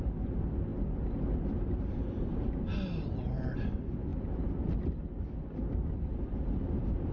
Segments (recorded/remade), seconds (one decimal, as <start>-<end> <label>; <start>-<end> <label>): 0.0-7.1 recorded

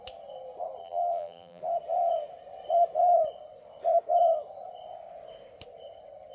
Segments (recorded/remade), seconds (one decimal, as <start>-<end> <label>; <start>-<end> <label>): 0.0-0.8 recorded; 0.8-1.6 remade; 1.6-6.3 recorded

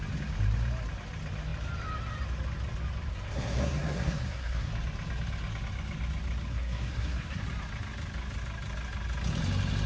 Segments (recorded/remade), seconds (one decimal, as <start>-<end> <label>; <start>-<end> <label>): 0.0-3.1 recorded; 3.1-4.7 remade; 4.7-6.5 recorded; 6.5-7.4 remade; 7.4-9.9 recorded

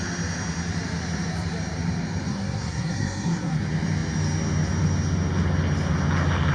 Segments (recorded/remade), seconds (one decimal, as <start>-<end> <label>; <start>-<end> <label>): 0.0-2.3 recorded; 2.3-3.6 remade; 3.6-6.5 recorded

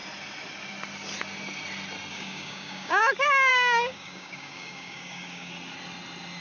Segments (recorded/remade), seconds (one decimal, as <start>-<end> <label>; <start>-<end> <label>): 0.0-2.1 recorded; 2.1-3.0 remade; 3.0-3.5 recorded; 3.5-5.5 remade; 5.5-6.4 recorded